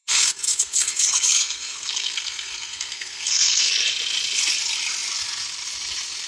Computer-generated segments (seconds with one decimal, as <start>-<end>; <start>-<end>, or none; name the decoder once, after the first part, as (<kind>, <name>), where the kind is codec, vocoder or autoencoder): 0.0-3.7 (codec, SNAC)